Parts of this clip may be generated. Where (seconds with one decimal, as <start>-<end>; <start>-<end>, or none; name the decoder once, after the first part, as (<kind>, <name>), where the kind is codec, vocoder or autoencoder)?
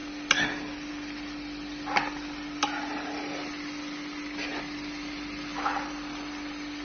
none